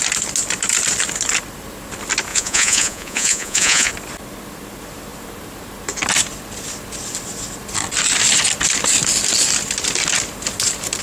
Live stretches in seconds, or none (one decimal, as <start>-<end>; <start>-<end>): 0.0-2.3; 3.9-11.0